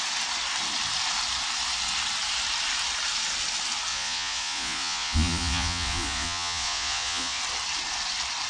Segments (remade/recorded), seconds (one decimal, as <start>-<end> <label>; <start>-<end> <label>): 0.0-3.9 recorded; 3.9-7.4 remade; 7.4-8.5 recorded